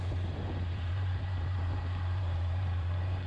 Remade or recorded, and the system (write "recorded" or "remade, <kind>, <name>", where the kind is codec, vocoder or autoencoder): remade, vocoder, BigVGAN v2